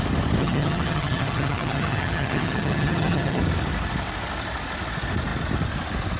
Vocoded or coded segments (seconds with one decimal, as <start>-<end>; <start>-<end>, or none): 0.4-3.4